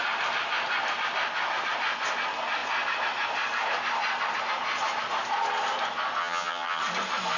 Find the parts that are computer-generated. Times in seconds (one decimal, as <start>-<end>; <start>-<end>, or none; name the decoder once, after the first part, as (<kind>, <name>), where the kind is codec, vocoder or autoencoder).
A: 6.2-6.8 (vocoder, HiFi-GAN)